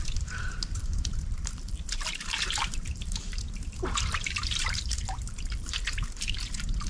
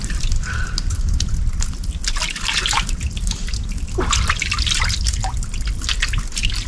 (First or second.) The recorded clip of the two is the second